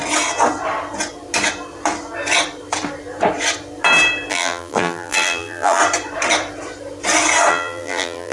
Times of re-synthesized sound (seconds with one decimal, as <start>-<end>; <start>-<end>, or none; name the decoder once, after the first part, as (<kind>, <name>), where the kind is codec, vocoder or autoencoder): 4.3-5.8 (vocoder, BigVGAN v2); 7.5-8.3